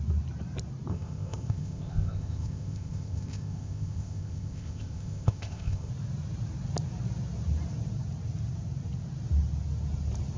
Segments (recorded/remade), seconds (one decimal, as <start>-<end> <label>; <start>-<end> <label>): 0.0-0.9 recorded; 0.9-5.9 remade; 5.9-10.4 recorded